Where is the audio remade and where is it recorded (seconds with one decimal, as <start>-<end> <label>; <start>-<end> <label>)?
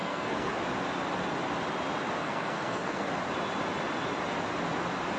0.0-0.5 remade; 0.5-2.2 recorded; 2.2-3.1 remade; 3.1-5.2 recorded